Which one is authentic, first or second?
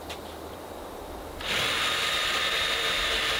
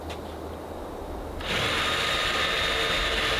second